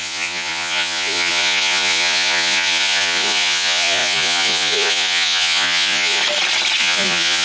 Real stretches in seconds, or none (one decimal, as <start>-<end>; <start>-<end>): 6.2-6.8

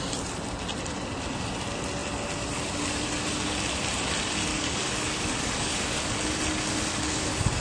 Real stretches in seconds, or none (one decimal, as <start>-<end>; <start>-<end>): 0.0-4.5; 6.0-6.9

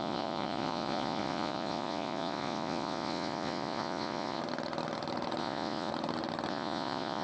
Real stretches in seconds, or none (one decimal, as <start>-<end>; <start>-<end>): 4.4-5.4; 5.9-6.5

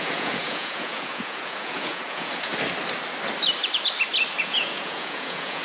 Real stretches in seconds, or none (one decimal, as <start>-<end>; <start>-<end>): 2.5-4.4

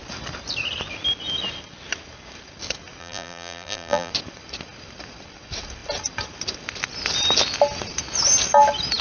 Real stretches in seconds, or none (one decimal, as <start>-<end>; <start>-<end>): 0.0-3.0; 4.1-9.0

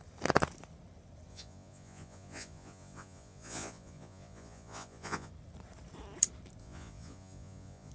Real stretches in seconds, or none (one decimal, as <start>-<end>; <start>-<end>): 0.0-1.3; 5.3-6.6